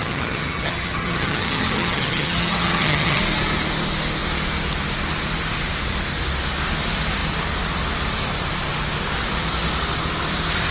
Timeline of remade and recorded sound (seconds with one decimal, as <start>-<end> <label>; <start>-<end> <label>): 0.0-3.2 remade; 3.2-10.7 recorded